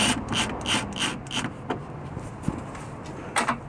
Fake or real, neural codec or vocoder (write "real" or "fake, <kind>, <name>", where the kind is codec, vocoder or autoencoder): real